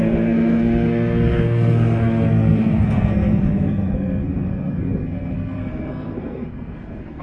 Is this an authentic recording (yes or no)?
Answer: no